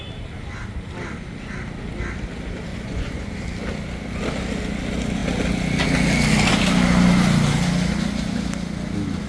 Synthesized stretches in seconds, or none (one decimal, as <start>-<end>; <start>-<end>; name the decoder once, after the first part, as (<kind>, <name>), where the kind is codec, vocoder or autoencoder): 2.7-3.3 (vocoder, Vocos)